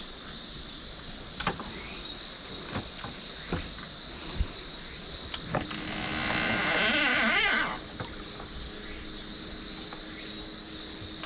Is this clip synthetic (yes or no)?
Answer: no